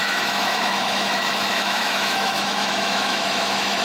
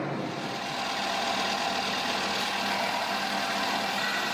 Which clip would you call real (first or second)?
second